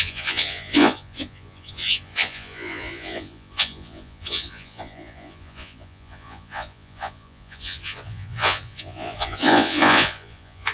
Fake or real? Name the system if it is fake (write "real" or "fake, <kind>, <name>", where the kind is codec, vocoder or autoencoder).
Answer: fake, vocoder, Vocos